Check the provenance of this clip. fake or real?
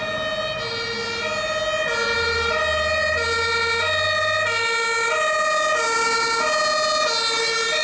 real